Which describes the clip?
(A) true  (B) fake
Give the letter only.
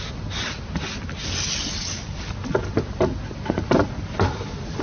A